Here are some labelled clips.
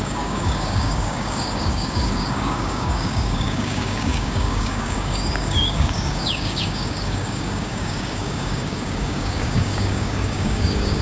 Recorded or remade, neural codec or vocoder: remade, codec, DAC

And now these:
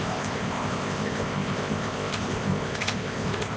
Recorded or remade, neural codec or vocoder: remade, codec, ZipCodec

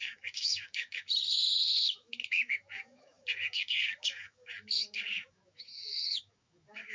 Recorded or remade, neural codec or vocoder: remade, autoencoder, DAC-VAE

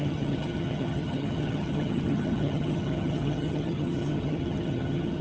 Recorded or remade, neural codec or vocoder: remade, vocoder, HiFi-GAN